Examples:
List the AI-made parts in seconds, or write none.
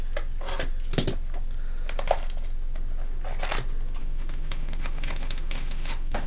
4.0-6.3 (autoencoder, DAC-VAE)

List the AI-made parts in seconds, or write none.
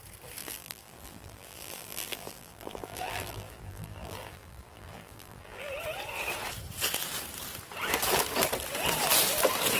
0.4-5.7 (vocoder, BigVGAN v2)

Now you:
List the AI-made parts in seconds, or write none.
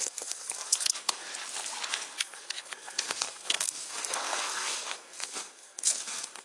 0.0-1.3 (codec, SNAC); 1.9-6.4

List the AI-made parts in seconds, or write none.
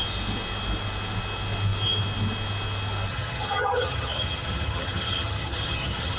3.1-6.2 (vocoder, HiFi-GAN)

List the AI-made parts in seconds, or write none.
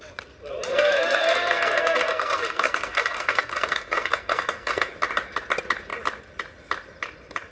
0.7-4.9 (codec, SNAC)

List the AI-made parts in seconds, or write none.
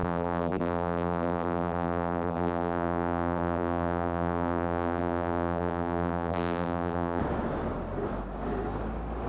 0.0-7.2 (vocoder, BigVGAN v2)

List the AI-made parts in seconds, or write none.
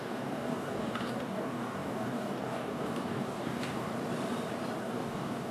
0.0-3.9 (codec, DAC); 4.8-5.5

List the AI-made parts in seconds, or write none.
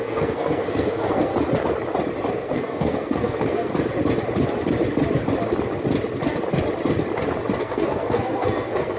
0.0-1.3 (codec, SNAC); 2.3-3.7; 7.6-9.0